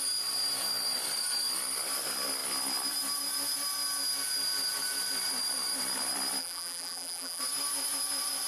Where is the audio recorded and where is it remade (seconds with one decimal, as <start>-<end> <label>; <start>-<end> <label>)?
0.0-6.4 recorded; 6.4-7.4 remade; 7.4-8.5 recorded